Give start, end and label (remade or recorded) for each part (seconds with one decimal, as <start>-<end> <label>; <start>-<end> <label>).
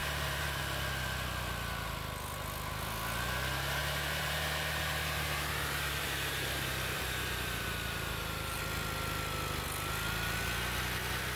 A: 0.0-0.6 remade; 0.6-3.8 recorded; 3.8-8.6 remade; 8.6-11.4 recorded